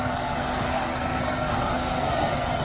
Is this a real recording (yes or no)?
no